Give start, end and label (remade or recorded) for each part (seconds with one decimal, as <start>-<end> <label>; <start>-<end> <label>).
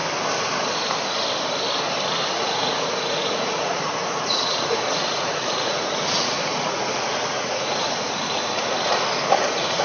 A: 0.0-2.3 recorded; 2.3-9.8 remade